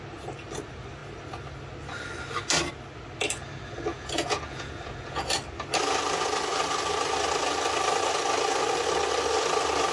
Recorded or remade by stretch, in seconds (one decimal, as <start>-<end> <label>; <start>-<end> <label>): 0.0-3.9 recorded; 3.9-5.3 remade; 5.3-9.9 recorded